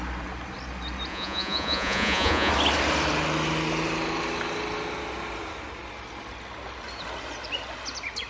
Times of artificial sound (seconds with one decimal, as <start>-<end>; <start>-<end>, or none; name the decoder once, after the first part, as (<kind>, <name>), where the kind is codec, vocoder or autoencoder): 1.1-2.5 (vocoder, Vocos)

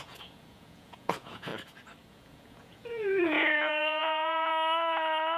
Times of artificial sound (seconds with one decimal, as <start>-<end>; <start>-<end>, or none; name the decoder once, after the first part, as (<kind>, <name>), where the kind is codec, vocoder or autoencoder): 0.0-1.5 (vocoder, Vocos); 2.1-4.5

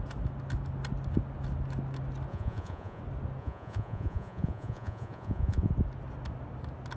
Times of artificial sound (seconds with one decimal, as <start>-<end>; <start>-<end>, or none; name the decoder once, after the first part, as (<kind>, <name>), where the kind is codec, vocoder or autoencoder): 2.3-3.0 (vocoder, Vocos); 3.4-5.7

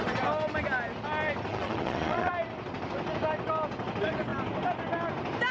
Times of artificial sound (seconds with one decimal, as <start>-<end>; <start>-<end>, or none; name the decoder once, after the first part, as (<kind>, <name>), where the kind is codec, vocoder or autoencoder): 1.5-2.3 (vocoder, Vocos)

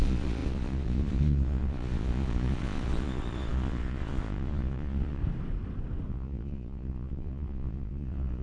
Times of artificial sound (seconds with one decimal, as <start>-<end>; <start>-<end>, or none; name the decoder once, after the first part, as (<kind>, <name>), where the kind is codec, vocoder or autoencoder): 0.0-5.2 (vocoder, Vocos); 6.1-8.4